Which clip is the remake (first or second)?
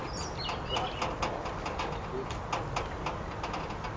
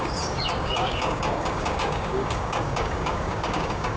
second